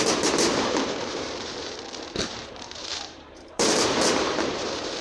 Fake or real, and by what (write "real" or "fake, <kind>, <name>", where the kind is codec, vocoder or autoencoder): fake, vocoder, BigVGAN v2